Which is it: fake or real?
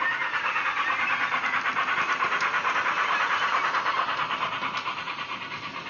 real